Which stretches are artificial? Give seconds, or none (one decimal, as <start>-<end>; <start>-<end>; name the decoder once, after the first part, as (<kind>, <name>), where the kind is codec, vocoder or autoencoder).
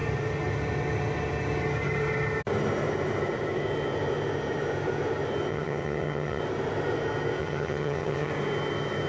5.5-6.4 (vocoder, HiFi-GAN); 7.4-8.3